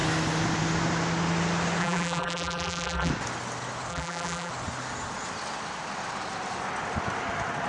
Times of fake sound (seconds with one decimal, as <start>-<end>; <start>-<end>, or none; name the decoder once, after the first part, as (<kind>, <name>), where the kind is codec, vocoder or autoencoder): 1.8-3.1 (vocoder, BigVGAN v2); 3.9-4.5